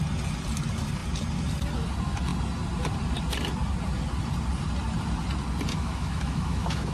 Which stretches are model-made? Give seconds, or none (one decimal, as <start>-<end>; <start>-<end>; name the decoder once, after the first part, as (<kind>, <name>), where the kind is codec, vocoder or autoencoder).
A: 5.7-6.9 (autoencoder, DAC-VAE)